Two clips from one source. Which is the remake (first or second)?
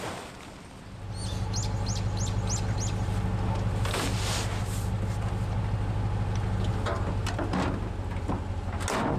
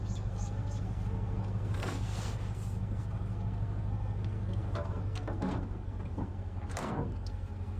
second